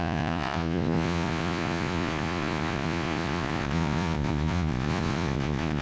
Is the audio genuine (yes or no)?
no